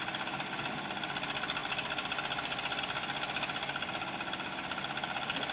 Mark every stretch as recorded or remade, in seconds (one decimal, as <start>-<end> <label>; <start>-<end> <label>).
0.0-5.5 recorded